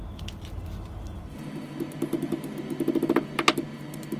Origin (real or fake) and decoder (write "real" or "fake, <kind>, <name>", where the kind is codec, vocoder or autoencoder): real